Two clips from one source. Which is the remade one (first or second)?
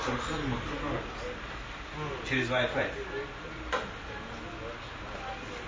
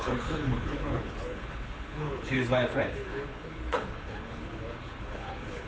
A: second